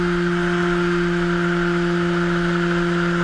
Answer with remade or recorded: recorded